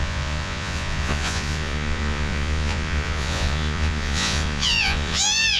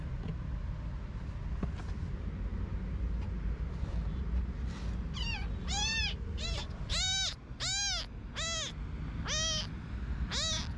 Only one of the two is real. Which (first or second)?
second